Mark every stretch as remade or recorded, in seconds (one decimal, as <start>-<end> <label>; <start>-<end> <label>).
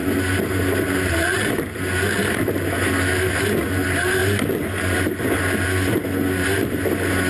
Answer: 0.0-7.3 recorded